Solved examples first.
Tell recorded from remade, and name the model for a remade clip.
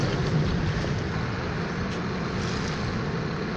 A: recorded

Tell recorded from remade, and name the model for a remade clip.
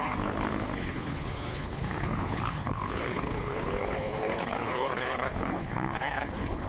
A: remade, codec, HILCodec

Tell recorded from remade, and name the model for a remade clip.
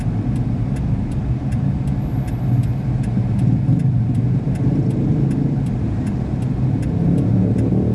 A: recorded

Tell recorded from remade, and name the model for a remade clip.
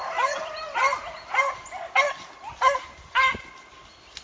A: recorded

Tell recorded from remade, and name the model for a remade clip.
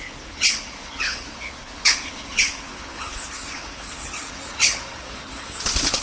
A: remade, codec, HILCodec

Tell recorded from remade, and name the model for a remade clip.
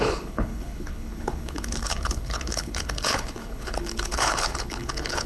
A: remade, codec, HILCodec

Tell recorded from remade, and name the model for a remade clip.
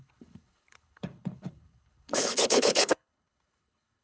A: remade, codec, HILCodec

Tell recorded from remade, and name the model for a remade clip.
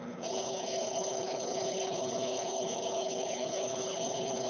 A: remade, codec, HILCodec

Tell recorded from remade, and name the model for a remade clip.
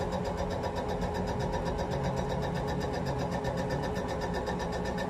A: recorded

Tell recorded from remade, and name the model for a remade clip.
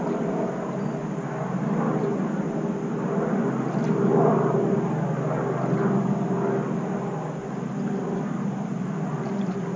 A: recorded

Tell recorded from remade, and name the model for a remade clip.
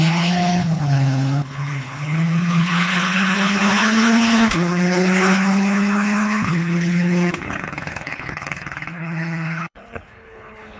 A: remade, codec, HILCodec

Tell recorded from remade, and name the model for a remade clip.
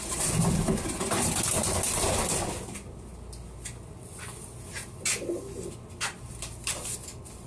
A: recorded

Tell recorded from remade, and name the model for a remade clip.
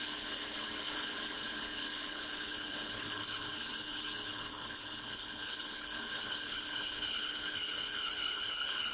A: remade, codec, HILCodec